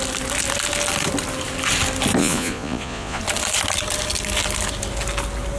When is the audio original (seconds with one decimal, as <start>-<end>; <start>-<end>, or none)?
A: 0.0-2.2; 3.2-5.6